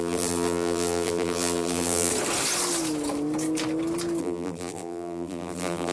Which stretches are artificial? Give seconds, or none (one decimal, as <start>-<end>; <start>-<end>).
0.0-2.1; 4.2-5.9